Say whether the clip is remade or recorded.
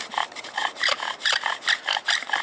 remade